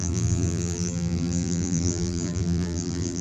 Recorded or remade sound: remade